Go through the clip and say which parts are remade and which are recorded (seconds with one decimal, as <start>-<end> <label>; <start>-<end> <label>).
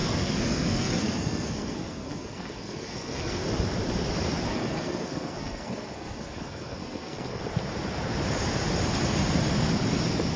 0.0-3.5 remade; 3.5-4.5 recorded; 4.5-7.4 remade; 7.4-10.4 recorded